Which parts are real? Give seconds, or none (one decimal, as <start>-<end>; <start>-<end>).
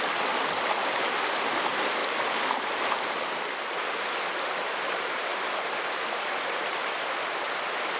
0.0-8.0